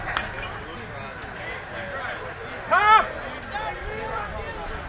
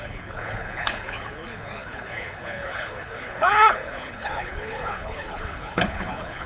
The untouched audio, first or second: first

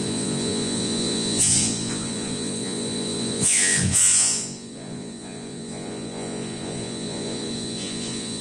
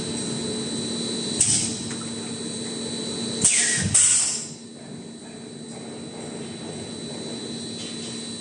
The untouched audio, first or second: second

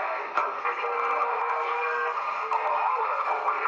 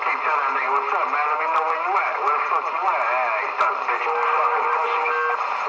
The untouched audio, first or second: second